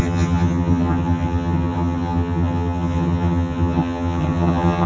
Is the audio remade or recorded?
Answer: remade